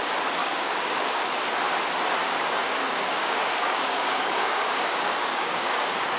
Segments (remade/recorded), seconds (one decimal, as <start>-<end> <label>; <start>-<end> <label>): 0.0-0.4 recorded; 0.4-1.2 remade; 1.2-2.2 recorded; 2.2-6.2 remade